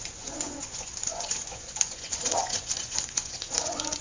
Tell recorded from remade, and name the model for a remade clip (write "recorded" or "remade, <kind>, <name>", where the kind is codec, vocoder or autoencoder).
remade, vocoder, Vocos